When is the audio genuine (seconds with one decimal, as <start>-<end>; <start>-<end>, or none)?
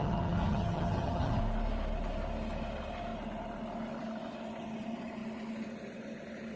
1.4-6.6